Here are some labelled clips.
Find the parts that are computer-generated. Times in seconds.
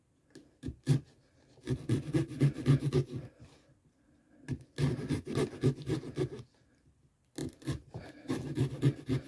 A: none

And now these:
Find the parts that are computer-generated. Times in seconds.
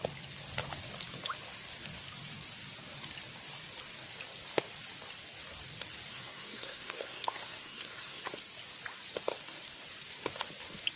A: 6.1-8.2 (codec, SNAC)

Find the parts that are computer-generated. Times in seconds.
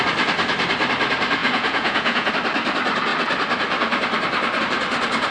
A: 1.4-2.3 (vocoder, Vocos)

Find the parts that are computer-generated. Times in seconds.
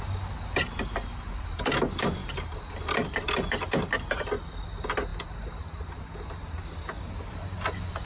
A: 2.2-2.9 (vocoder, BigVGAN v2)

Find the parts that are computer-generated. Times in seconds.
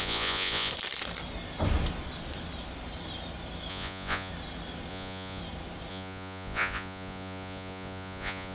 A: 0.0-0.7 (vocoder, Vocos); 3.7-4.3; 4.9-5.4; 5.9-8.5